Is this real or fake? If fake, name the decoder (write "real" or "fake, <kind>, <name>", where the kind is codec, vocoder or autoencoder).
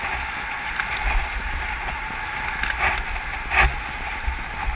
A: real